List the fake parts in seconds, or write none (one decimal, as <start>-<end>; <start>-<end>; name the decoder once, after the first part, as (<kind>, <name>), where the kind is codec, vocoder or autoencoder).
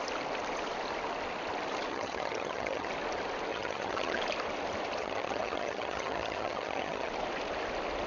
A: 1.9-2.9 (vocoder, HiFi-GAN); 3.5-4.2; 5.0-7.1